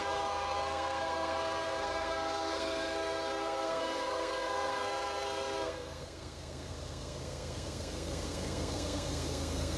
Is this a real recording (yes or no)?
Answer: no